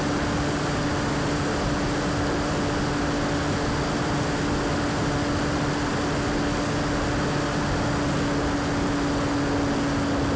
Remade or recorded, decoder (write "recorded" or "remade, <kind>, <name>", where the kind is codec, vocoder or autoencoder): recorded